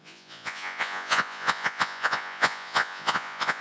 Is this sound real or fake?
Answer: fake